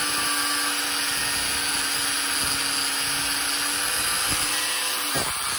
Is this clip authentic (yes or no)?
yes